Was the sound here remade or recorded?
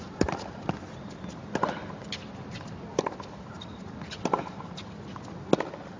recorded